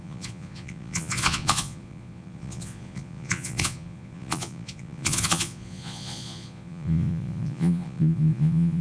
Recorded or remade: remade